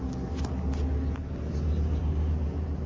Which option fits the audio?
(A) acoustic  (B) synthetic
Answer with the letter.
A